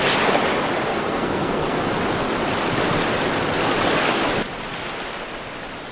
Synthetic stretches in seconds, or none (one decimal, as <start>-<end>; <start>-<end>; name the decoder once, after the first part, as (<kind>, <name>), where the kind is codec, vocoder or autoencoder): 0.9-1.8 (codec, SNAC)